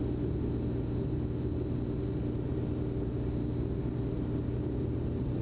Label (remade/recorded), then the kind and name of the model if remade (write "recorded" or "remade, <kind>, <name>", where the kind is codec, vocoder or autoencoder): recorded